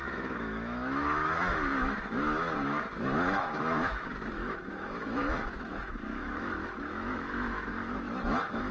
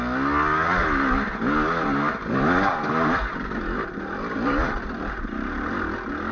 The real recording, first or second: second